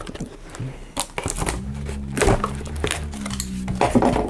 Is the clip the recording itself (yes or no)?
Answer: yes